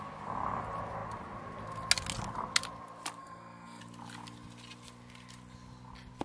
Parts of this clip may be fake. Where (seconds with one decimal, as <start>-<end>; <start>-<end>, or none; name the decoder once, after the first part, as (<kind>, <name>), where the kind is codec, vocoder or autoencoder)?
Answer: 3.2-3.8 (codec, SNAC)